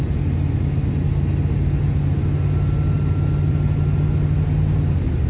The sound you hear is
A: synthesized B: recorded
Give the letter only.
B